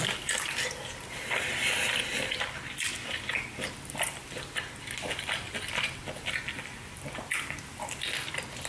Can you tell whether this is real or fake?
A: real